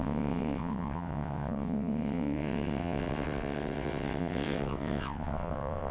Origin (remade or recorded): remade